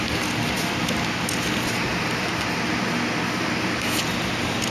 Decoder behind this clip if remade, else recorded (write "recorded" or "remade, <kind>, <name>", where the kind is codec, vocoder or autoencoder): recorded